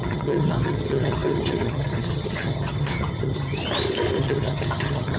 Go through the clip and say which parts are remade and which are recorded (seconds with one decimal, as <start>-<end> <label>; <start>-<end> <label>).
0.0-3.6 remade; 3.6-4.2 recorded; 4.2-5.2 remade